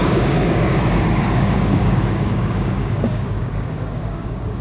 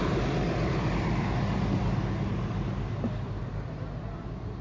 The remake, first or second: first